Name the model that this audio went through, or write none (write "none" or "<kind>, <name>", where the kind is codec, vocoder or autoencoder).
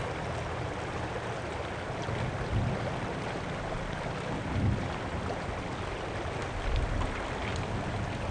none